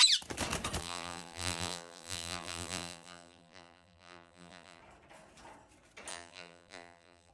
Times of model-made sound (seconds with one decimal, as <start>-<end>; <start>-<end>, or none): 0.8-4.8; 6.1-7.3